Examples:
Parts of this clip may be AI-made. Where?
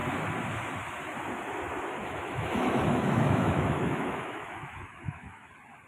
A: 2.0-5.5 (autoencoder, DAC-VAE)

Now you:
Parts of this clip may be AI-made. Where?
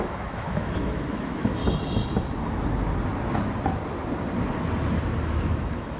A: 0.0-1.6 (autoencoder, DAC-VAE); 5.2-6.0